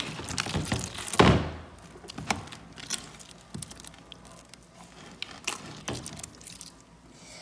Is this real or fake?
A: real